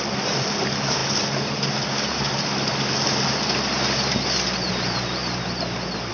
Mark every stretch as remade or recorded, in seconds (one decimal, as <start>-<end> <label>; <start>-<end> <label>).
0.0-6.1 recorded